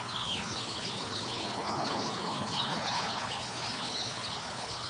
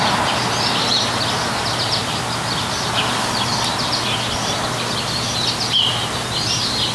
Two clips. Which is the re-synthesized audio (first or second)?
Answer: first